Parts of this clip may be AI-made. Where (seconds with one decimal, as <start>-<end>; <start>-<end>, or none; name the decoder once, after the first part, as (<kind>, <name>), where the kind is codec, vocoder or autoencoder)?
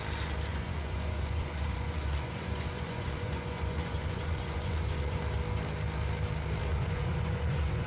0.5-5.2 (vocoder, Vocos); 6.7-7.9